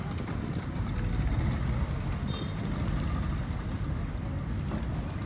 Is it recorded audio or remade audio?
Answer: recorded